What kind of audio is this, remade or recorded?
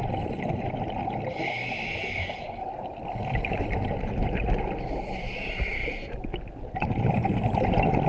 recorded